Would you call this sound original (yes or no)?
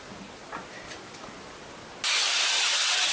yes